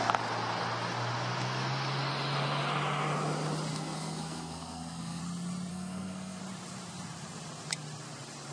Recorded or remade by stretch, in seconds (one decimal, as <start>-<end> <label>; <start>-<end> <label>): 0.0-3.7 recorded; 3.7-5.2 remade; 5.2-5.7 recorded; 5.7-6.4 remade; 6.4-8.5 recorded